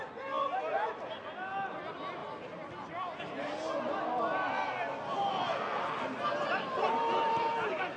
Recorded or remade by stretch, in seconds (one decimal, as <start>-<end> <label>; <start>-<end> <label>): 0.0-8.0 recorded